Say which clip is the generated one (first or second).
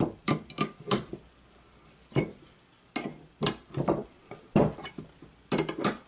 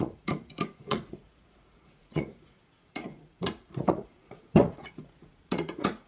second